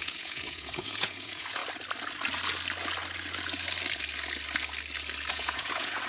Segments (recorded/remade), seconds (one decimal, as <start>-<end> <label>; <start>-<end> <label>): 0.0-1.6 remade; 1.6-5.3 recorded; 5.3-6.1 remade